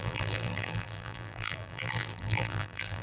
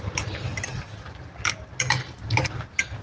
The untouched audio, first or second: second